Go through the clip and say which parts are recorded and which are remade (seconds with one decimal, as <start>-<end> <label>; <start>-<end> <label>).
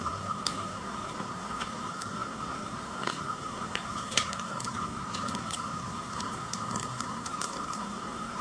0.0-8.4 remade